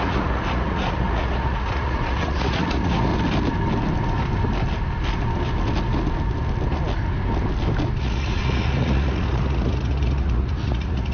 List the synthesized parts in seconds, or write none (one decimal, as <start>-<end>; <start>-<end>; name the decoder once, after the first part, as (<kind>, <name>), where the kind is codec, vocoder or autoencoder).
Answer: 0.0-3.1 (vocoder, Vocos); 8.0-11.1

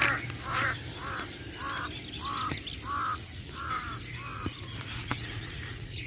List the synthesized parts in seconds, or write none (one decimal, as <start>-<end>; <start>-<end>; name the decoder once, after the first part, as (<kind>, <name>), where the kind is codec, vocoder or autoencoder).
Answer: 3.1-3.7 (vocoder, Vocos); 4.3-6.1

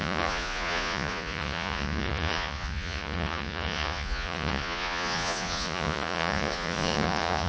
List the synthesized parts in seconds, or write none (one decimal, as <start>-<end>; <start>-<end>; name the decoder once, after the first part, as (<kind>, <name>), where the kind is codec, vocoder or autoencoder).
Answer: 0.0-7.5 (vocoder, Vocos)

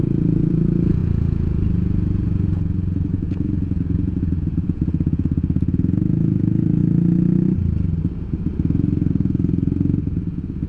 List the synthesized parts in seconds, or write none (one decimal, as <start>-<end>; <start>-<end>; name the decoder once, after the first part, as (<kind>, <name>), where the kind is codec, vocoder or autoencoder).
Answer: 0.0-6.8 (vocoder, Vocos); 8.0-8.5; 9.1-10.7

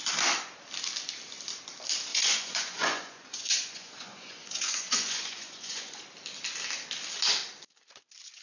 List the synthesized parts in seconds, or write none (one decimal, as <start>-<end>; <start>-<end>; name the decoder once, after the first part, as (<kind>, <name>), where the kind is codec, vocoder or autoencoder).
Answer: 2.1-6.0 (vocoder, Vocos)